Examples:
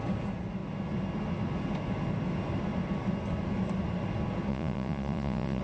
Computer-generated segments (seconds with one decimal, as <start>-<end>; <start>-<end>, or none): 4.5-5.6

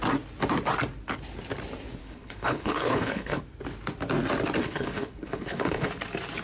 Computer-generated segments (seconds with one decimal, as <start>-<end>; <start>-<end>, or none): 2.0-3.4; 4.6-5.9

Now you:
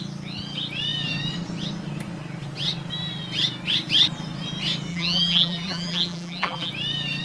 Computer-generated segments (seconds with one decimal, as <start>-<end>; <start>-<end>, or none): 4.9-6.7

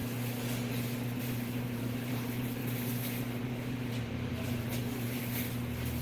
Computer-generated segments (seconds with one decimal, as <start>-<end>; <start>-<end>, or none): 1.2-2.6; 3.4-5.2

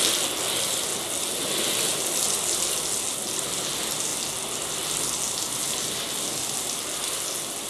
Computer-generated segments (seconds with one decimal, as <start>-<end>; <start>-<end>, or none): none

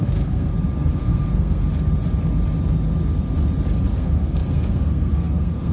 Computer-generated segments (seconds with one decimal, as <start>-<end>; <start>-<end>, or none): 0.0-0.5; 1.0-1.6; 3.9-5.7

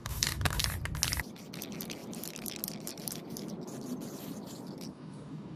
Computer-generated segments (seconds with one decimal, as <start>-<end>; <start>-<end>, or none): 0.0-0.6; 4.9-5.6

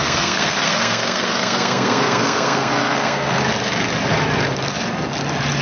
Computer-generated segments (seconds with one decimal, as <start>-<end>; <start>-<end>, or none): 0.0-3.4